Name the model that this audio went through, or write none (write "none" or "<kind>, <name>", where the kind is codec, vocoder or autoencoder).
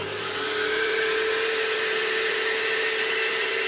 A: vocoder, BigVGAN v2